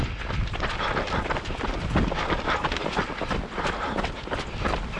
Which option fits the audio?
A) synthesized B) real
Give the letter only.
B